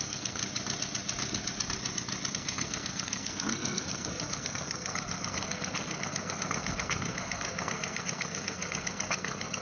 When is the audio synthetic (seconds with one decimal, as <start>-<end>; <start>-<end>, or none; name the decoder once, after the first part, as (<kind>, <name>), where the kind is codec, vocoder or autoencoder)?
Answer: 0.0-0.4 (codec, SNAC); 2.3-9.6